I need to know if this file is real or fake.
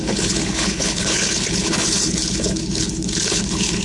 fake